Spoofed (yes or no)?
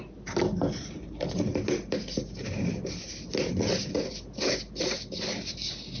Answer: no